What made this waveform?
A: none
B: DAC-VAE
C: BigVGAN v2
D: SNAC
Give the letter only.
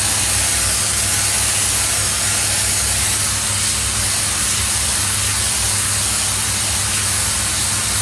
A